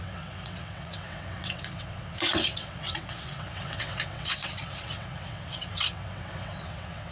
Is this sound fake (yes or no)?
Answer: yes